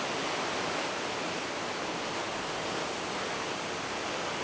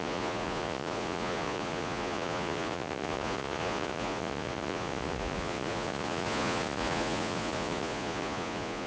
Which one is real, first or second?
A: first